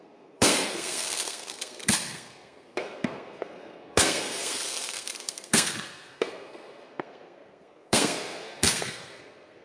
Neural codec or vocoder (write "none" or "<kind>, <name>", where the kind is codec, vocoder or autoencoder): codec, SNAC